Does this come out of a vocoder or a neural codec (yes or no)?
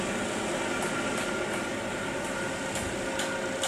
no